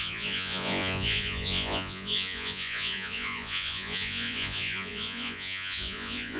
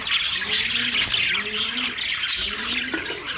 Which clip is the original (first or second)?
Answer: second